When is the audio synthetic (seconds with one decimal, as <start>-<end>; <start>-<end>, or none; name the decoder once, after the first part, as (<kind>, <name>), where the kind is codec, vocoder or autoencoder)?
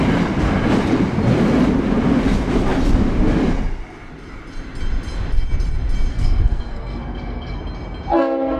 6.1-7.6 (codec, SNAC)